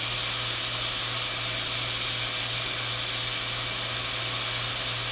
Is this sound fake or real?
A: real